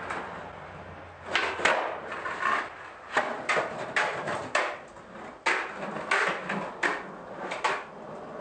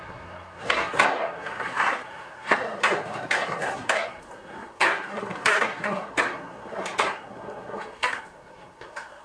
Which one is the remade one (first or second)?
second